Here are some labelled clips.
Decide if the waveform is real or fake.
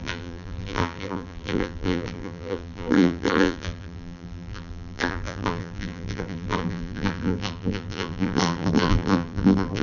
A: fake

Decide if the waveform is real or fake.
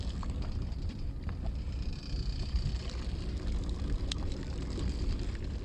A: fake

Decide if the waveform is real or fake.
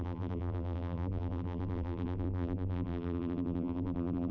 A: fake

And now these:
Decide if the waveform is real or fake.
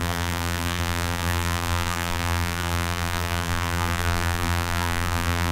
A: fake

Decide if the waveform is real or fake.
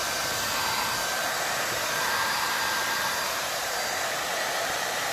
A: fake